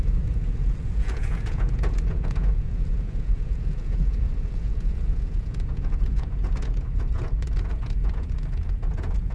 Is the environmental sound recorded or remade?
remade